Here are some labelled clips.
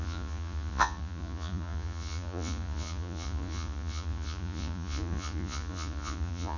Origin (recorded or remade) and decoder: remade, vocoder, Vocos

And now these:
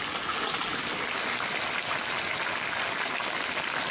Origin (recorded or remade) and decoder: recorded